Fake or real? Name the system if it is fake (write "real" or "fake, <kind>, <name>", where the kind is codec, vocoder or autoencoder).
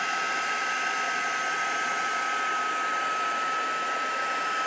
real